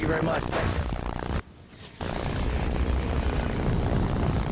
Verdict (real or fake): real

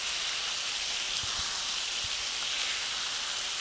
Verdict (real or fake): real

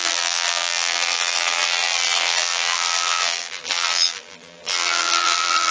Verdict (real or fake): fake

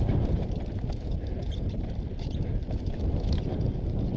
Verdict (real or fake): fake